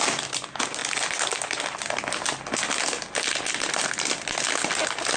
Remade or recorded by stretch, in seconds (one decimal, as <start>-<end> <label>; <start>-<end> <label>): 0.0-5.2 recorded